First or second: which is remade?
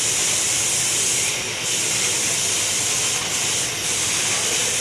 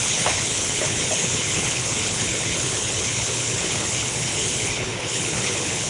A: second